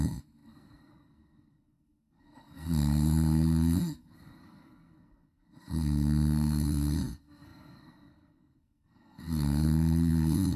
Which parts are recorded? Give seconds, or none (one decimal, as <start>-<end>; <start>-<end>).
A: none